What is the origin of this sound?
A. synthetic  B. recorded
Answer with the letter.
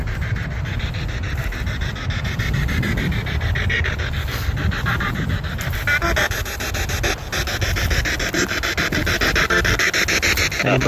B